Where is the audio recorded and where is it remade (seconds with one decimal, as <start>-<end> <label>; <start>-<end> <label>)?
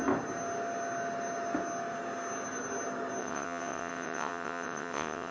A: 0.0-3.2 recorded; 3.2-5.3 remade